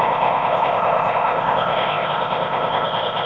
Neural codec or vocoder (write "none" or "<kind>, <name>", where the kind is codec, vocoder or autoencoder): codec, ZipCodec